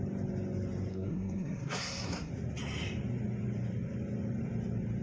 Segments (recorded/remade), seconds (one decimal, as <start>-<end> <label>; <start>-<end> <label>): 0.0-0.9 recorded; 0.9-2.3 remade; 2.3-5.0 recorded